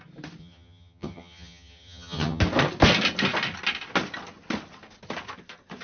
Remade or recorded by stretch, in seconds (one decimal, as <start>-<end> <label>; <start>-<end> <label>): 0.0-0.4 recorded; 0.4-2.4 remade; 2.4-5.8 recorded